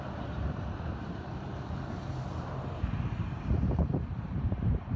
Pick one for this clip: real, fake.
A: fake